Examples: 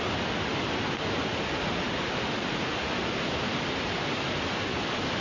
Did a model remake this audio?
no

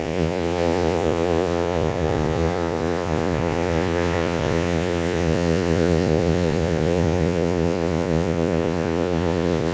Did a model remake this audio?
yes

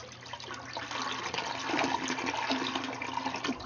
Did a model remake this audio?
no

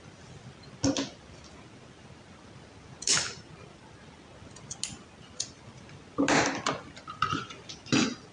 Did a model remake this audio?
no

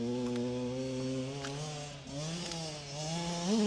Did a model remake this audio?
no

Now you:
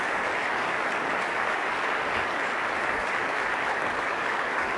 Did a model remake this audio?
yes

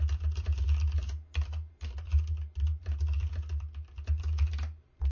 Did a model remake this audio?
no